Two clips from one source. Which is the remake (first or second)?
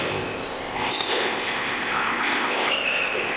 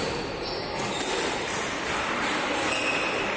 first